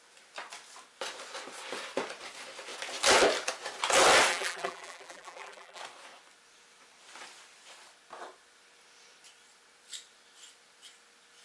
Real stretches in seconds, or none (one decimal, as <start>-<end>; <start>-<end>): 0.0-4.3; 5.8-11.4